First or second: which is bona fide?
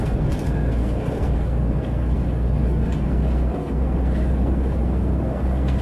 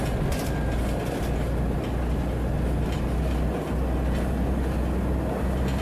second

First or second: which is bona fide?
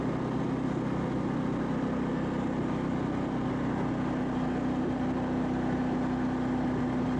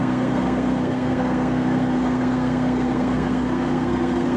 first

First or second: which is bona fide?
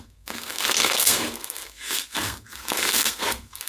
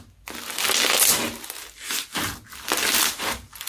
second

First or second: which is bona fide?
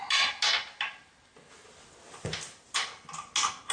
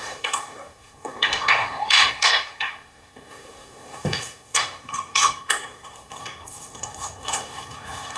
first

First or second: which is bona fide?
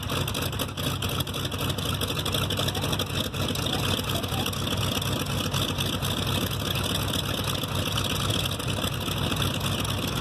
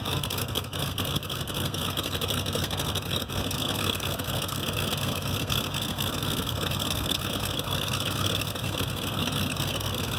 first